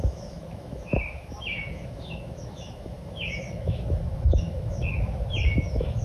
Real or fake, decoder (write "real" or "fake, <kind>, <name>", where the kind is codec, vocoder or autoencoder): fake, autoencoder, DAC-VAE